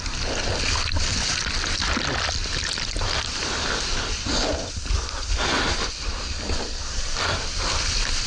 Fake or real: real